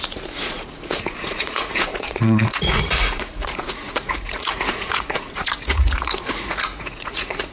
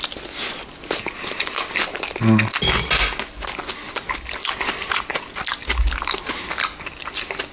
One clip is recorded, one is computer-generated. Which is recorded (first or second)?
second